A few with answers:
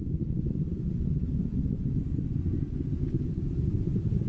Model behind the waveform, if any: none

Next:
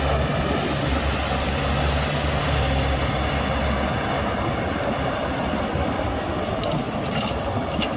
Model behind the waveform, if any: none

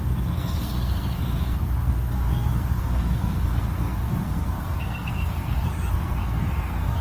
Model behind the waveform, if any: codec, SNAC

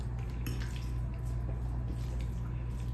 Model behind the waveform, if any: none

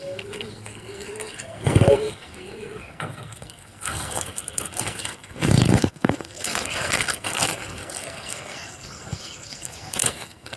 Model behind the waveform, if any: codec, SNAC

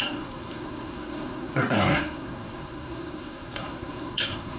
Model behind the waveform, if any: codec, SNAC